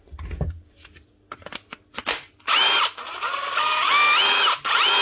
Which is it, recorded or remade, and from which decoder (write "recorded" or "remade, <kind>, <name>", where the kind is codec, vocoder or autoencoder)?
recorded